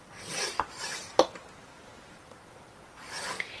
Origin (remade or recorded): recorded